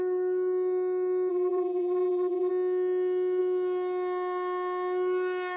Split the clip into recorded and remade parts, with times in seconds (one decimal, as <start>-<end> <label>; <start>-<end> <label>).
0.0-1.3 recorded; 1.3-2.5 remade; 2.5-5.6 recorded